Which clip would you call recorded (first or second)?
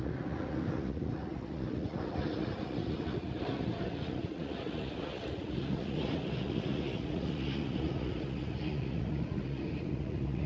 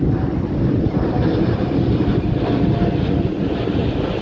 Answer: second